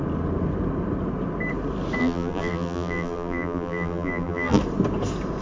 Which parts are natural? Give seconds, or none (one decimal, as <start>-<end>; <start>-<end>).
0.0-2.0; 4.6-5.4